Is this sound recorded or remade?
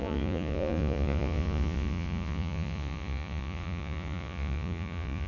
remade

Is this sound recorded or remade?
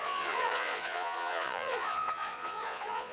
remade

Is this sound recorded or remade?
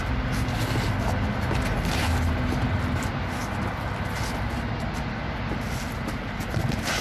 recorded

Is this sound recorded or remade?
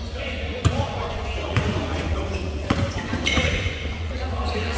remade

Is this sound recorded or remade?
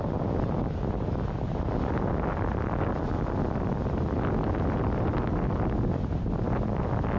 recorded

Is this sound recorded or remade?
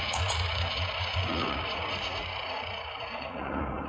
remade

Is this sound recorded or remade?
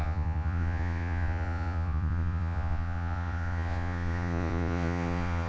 remade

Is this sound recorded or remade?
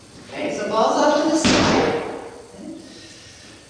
recorded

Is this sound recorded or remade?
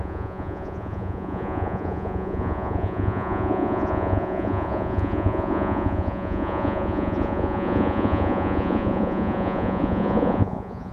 remade